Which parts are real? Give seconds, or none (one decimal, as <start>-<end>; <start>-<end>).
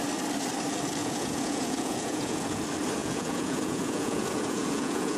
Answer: 0.0-1.0; 2.6-3.0